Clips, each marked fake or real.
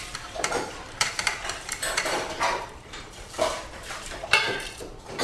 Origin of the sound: fake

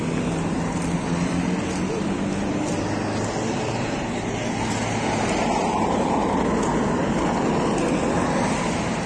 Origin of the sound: real